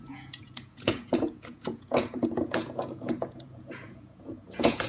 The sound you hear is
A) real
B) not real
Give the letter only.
B